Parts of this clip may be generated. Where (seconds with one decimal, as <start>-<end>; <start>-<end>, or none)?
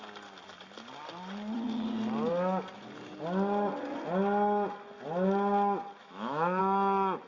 6.0-6.6